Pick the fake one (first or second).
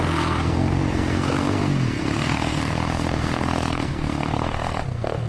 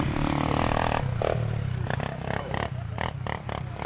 first